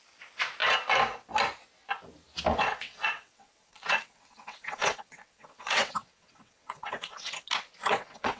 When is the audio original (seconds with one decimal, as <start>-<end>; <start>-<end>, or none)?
0.0-2.5; 7.3-7.8